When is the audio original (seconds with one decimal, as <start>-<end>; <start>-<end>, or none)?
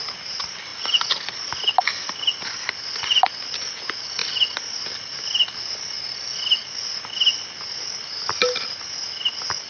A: 0.0-9.7